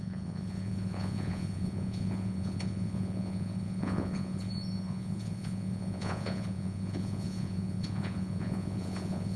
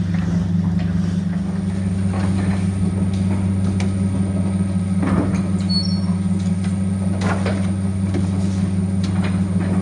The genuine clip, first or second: second